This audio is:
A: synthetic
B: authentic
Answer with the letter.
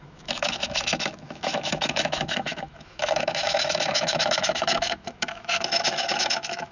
A